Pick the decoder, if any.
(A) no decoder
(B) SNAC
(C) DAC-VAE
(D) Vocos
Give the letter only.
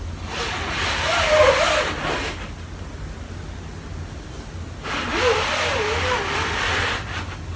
A